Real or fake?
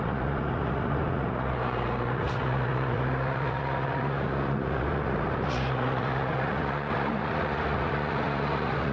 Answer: fake